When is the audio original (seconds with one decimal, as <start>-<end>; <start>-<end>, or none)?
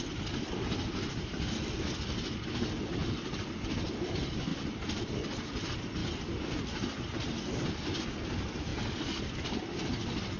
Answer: 0.0-3.0; 3.7-10.4